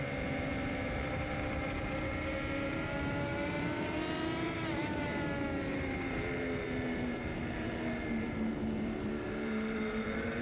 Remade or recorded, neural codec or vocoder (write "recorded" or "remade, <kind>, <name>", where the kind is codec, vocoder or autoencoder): remade, vocoder, BigVGAN v2